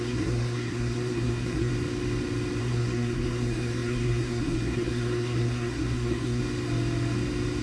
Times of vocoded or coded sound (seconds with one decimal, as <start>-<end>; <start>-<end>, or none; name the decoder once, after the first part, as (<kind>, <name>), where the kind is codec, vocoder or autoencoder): 0.0-1.7 (codec, SNAC); 2.6-6.4